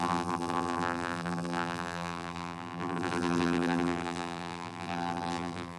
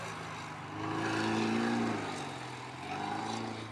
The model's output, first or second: first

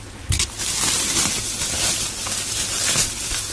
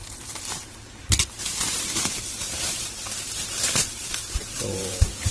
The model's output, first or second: second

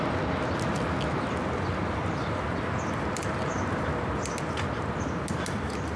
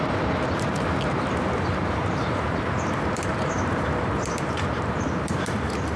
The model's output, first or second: second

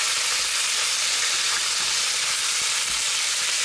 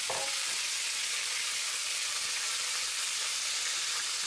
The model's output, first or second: second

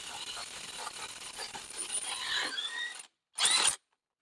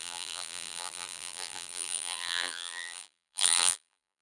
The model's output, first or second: second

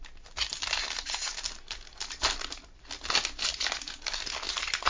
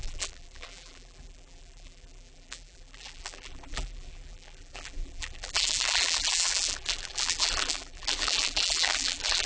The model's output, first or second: second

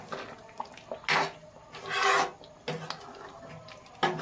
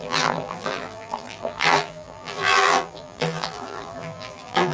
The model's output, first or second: second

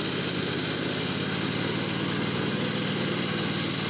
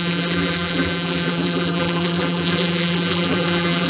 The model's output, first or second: second